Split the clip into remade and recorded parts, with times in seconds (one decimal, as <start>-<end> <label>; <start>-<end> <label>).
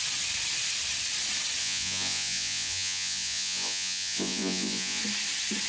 0.0-1.6 recorded; 1.6-5.0 remade; 5.0-5.7 recorded